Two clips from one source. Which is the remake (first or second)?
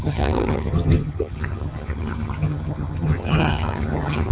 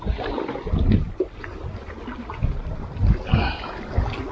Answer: first